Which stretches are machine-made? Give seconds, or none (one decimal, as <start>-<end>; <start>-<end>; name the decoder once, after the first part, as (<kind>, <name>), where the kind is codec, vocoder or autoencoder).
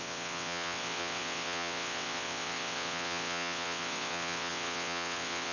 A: 0.0-5.5 (vocoder, WaveNeXt)